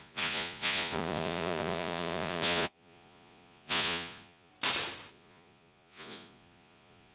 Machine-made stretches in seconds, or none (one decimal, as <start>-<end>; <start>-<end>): 0.0-4.5; 5.1-7.1